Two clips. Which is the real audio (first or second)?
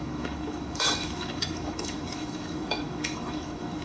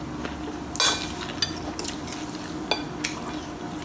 second